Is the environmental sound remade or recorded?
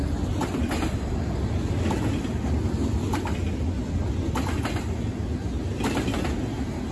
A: recorded